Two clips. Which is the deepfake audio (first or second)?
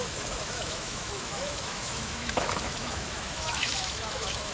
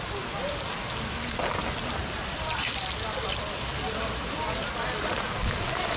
first